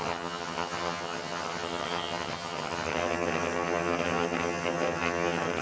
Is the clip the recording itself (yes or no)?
no